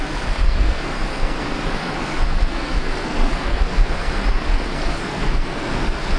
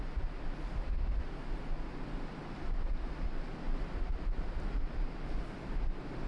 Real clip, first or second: second